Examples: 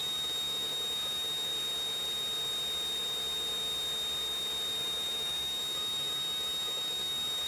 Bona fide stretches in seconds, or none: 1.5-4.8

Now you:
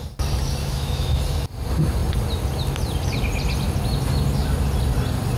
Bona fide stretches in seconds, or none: 0.0-0.6; 1.2-5.4

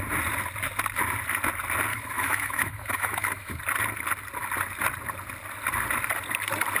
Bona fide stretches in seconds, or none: 0.0-1.9; 3.6-6.8

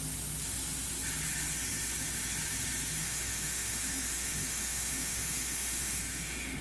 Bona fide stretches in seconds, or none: 0.0-3.0

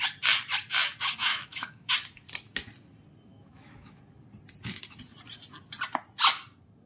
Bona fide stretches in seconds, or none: 0.0-1.3; 1.9-3.3; 4.0-6.9

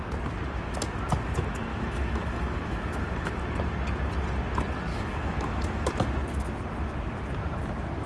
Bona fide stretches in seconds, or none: 0.0-1.7; 3.4-4.9; 5.9-8.1